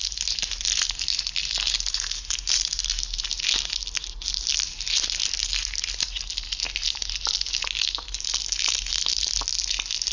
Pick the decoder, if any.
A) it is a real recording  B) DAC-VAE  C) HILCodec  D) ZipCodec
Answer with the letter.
A